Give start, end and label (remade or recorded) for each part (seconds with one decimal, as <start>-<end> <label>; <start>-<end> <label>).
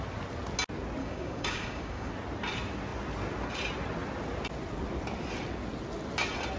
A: 0.0-1.0 recorded; 1.0-2.1 remade; 2.1-6.6 recorded